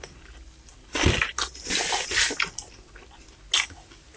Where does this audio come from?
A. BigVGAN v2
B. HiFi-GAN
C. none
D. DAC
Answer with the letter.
C